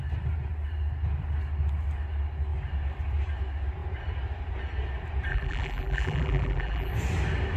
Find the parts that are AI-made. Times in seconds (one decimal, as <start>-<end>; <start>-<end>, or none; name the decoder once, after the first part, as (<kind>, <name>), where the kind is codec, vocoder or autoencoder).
5.3-6.9 (vocoder, BigVGAN v2)